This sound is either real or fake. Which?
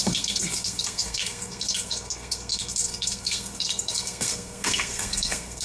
fake